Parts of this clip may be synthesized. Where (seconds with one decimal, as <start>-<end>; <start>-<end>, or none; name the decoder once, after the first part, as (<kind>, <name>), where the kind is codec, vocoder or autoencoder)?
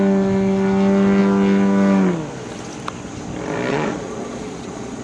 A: 3.7-5.0 (vocoder, Vocos)